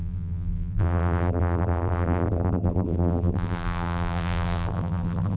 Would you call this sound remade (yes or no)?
yes